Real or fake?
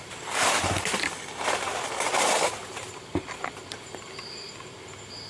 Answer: fake